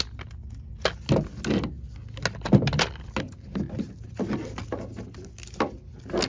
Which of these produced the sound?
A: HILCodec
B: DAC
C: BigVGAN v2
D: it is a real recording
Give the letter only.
D